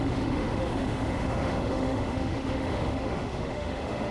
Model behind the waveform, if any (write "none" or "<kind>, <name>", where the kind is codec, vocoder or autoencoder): autoencoder, DAC-VAE